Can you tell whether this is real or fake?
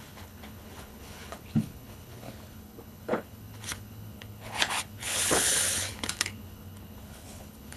fake